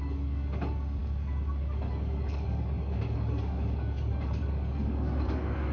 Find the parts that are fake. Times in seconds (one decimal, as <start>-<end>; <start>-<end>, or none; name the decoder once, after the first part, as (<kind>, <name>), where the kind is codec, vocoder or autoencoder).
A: 0.0-5.7 (codec, DAC)